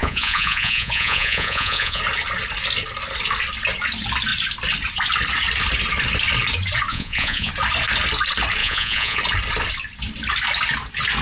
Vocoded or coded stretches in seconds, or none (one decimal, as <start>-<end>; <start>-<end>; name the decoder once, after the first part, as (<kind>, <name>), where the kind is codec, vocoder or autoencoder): 0.0-2.0 (vocoder, Vocos); 6.9-7.5; 8.6-9.2